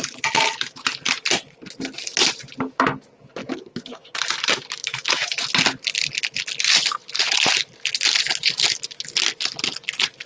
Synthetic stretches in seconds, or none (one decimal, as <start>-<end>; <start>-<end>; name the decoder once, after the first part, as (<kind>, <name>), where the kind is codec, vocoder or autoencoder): 3.4-4.2 (autoencoder, DAC-VAE); 4.8-5.4